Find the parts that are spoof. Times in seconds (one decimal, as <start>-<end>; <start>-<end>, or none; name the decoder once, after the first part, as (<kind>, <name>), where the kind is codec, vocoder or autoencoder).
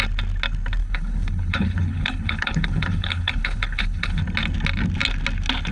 0.8-4.2 (codec, HILCodec)